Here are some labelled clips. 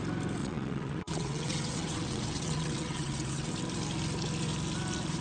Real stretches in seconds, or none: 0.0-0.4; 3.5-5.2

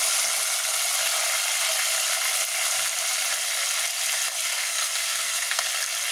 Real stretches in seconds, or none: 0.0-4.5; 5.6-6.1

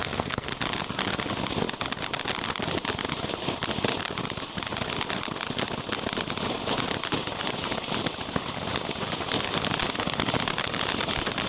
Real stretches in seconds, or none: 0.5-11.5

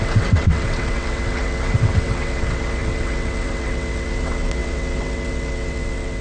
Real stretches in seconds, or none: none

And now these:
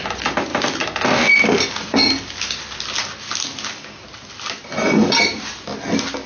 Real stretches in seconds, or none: 0.0-6.3

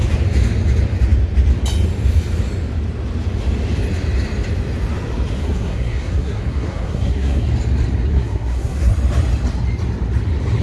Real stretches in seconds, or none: 0.0-5.4; 7.5-8.1; 8.9-10.6